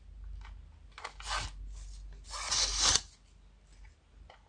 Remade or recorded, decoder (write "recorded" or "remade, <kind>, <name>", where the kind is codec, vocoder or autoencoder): recorded